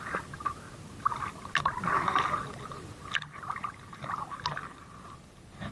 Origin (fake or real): real